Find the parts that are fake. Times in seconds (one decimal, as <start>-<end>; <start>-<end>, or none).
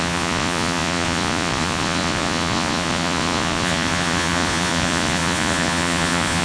0.0-6.4